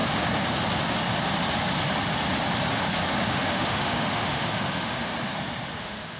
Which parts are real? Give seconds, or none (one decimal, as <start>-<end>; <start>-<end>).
0.0-3.3; 5.1-5.8